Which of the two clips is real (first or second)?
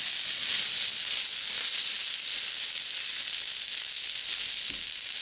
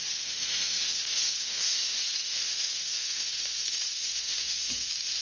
first